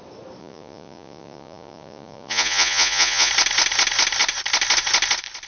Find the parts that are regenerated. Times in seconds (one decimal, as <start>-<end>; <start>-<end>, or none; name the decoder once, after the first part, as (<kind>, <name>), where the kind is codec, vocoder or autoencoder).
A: 0.4-3.3 (vocoder, Vocos)